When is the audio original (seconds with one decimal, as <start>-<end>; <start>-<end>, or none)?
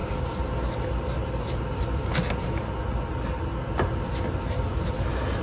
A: 0.0-5.4